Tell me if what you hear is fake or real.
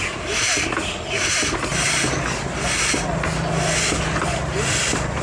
real